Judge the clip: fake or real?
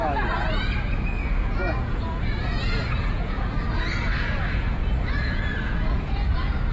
fake